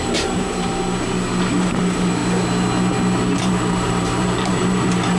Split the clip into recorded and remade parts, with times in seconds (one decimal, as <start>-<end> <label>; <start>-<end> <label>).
0.0-0.7 remade; 0.7-1.5 recorded; 1.5-2.2 remade; 2.2-3.4 recorded; 3.4-5.2 remade